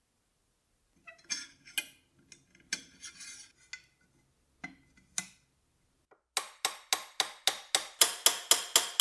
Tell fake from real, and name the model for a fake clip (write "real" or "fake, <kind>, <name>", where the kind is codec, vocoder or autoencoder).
real